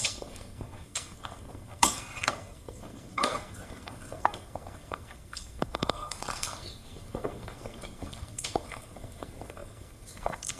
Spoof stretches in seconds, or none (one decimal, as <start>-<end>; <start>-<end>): 0.0-10.6